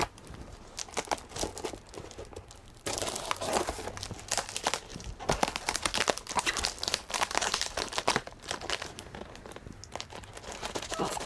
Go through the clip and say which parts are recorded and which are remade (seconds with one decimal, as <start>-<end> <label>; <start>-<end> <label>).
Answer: 0.0-2.6 recorded; 2.6-3.6 remade; 3.6-4.9 recorded; 4.9-9.9 remade; 9.9-11.3 recorded